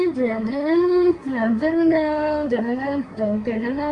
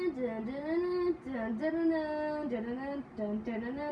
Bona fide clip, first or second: second